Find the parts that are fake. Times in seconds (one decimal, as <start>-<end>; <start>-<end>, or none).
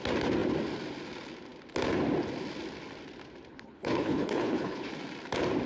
3.5-4.9